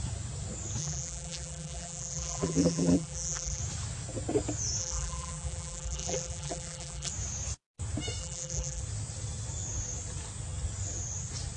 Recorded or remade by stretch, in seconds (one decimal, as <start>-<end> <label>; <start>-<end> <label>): 0.0-0.8 recorded; 0.8-3.6 remade; 3.6-4.8 recorded; 4.8-7.1 remade; 7.1-8.2 recorded; 8.2-8.8 remade; 8.8-11.6 recorded